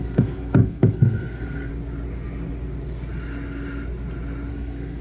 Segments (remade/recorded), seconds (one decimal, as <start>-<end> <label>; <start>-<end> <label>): 0.0-1.7 remade; 1.7-4.5 recorded; 4.5-5.0 remade